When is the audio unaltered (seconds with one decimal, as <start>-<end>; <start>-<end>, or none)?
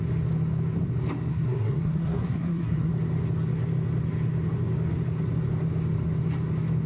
0.0-1.3; 2.9-6.9